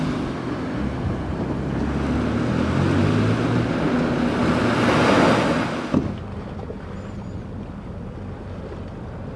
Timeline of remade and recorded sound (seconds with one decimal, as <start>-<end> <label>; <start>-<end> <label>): 0.0-9.4 recorded